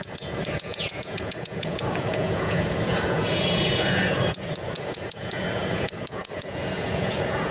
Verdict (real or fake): fake